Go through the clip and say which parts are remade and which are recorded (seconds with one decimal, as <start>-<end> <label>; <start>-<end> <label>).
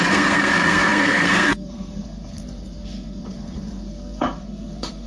0.0-5.1 remade